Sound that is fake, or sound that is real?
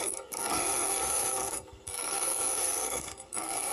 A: fake